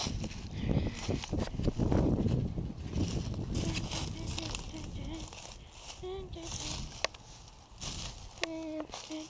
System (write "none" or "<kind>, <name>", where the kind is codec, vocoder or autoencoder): none